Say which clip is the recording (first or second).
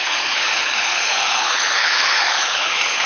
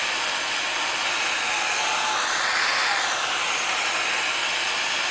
second